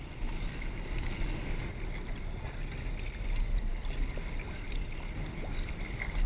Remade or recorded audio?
recorded